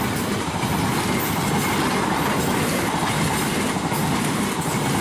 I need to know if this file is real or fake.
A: real